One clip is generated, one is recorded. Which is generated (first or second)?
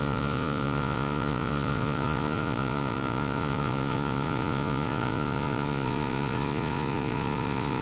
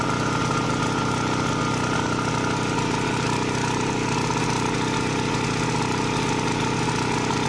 first